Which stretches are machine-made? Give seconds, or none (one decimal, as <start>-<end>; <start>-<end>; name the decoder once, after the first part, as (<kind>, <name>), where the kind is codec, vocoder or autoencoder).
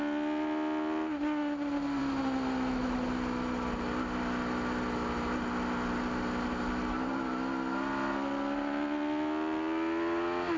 none